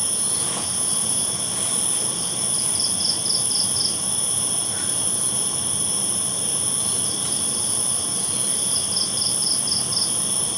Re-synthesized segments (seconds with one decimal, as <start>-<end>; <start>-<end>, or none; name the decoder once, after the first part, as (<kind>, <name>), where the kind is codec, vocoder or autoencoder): 0.0-1.3 (vocoder, Vocos)